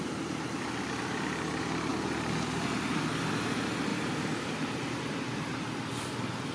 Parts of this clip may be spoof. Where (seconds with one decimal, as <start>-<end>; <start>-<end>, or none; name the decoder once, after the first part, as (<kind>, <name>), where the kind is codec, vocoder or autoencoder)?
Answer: 3.9-4.8 (vocoder, BigVGAN v2)